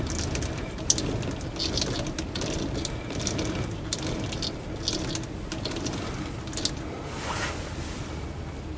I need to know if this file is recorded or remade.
recorded